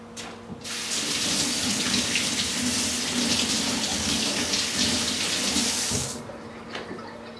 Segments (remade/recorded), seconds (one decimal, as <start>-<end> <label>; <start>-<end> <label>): 0.0-1.7 recorded; 1.7-2.3 remade; 2.3-3.9 recorded; 3.9-4.5 remade; 4.5-5.6 recorded; 5.6-6.2 remade; 6.2-7.4 recorded